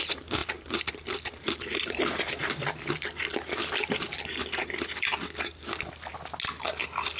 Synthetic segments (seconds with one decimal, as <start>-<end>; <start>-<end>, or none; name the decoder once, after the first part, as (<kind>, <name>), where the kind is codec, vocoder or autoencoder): 0.4-2.0 (vocoder, BigVGAN v2); 2.4-6.1